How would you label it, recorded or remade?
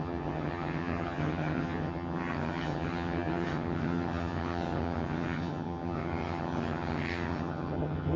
remade